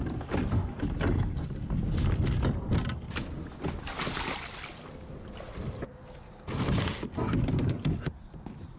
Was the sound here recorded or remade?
recorded